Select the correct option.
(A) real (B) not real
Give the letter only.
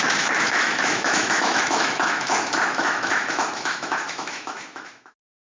B